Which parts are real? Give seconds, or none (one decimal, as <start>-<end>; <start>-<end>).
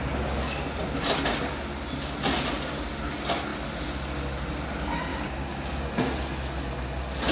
0.0-5.1; 5.9-7.3